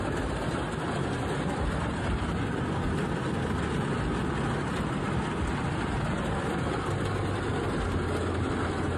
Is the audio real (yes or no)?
yes